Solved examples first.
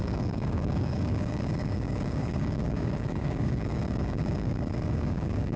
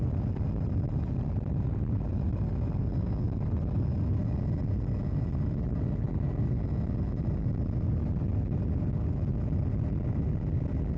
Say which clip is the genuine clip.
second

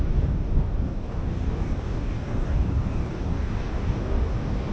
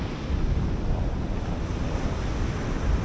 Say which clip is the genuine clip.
second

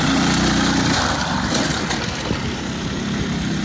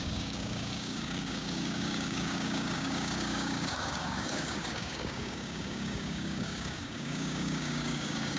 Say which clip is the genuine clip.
first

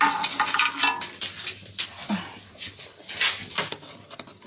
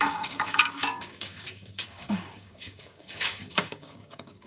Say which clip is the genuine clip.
first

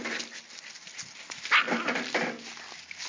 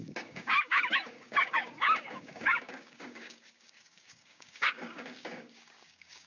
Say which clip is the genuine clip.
first